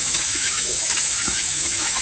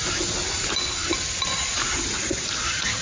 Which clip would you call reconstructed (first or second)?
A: first